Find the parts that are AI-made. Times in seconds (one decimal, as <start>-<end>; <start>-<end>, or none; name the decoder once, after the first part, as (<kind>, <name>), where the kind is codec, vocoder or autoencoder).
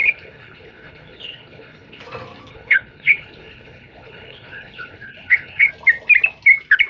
0.0-2.0 (codec, HILCodec); 2.5-5.7